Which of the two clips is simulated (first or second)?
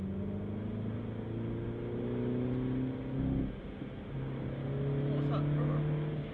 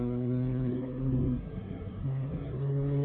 second